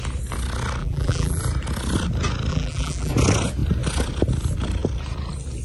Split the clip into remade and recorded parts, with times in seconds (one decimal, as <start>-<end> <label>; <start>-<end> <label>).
0.0-0.8 recorded; 0.8-1.4 remade; 1.4-2.5 recorded; 2.5-3.1 remade; 3.1-5.6 recorded